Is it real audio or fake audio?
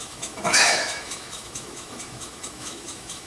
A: fake